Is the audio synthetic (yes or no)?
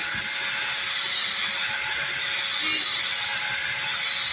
no